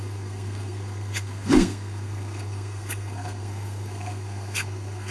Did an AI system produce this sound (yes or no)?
yes